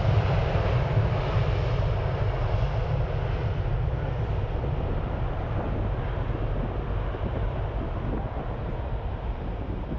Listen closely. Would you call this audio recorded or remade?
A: recorded